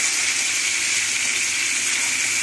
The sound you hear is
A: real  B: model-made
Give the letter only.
A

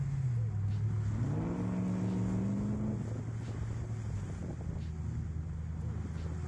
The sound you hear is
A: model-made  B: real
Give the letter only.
B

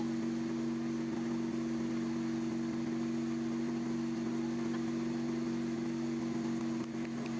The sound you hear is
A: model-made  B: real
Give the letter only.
B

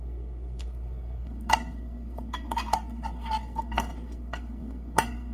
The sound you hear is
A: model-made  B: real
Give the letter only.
A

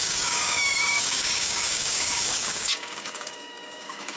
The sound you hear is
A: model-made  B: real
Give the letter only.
A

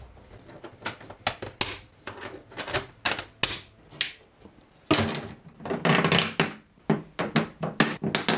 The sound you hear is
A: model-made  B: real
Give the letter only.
B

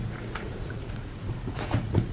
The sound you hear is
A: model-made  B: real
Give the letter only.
A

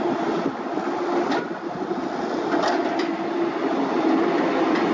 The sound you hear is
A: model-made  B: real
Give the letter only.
B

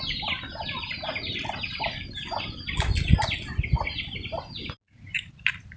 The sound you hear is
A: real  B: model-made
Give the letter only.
A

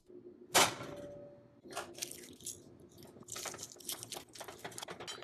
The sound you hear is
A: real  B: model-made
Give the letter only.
A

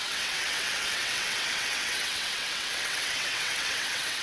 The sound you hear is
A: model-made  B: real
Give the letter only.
A